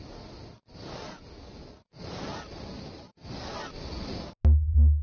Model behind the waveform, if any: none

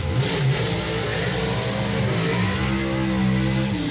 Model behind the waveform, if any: none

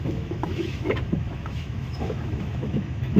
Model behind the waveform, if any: autoencoder, DAC-VAE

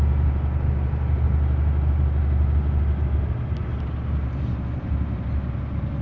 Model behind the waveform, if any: none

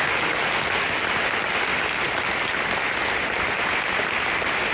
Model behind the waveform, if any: none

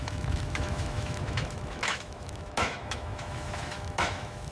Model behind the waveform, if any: autoencoder, DAC-VAE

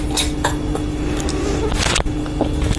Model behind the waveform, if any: none